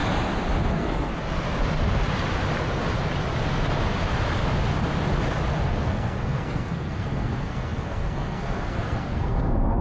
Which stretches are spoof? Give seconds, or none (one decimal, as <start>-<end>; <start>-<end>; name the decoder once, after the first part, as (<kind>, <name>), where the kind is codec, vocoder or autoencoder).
0.7-1.1 (codec, SNAC); 5.5-9.8